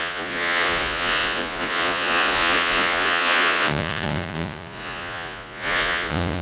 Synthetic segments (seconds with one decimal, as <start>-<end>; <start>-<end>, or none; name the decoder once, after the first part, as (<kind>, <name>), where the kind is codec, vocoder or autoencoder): 0.0-6.4 (vocoder, Vocos)